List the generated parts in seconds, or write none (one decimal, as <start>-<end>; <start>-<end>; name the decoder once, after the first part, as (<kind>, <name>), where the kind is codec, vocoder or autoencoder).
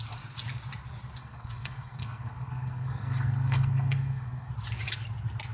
1.2-4.5 (codec, SNAC)